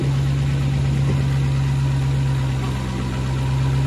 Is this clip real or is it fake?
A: real